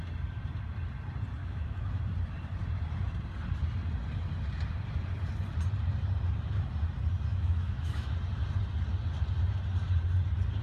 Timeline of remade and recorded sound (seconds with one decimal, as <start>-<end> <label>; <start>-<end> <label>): 0.0-1.4 recorded; 1.4-2.0 remade; 2.0-7.3 recorded; 7.3-8.1 remade; 8.1-10.6 recorded